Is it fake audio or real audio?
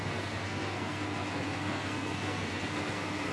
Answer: fake